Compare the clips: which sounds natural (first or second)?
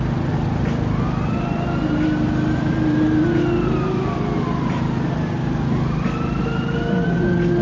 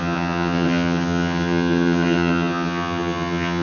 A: first